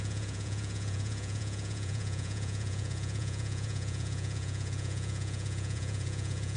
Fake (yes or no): yes